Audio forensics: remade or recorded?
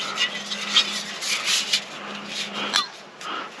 recorded